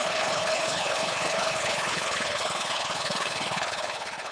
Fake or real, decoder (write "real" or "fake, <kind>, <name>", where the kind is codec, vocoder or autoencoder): fake, codec, HILCodec